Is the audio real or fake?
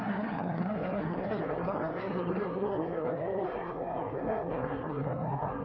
fake